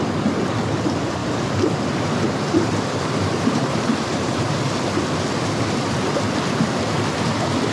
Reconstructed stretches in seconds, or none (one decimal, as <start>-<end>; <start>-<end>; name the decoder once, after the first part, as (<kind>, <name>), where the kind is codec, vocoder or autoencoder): 1.2-4.5 (vocoder, BigVGAN v2)